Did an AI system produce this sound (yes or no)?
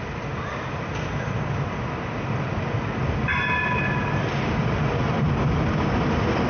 no